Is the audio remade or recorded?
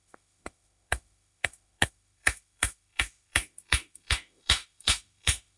remade